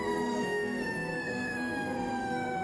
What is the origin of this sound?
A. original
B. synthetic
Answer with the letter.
B